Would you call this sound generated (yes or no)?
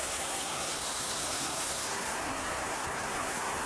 yes